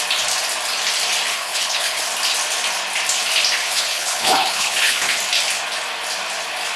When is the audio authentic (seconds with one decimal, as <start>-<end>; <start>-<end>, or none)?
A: 0.0-1.3; 2.0-3.6; 5.2-6.8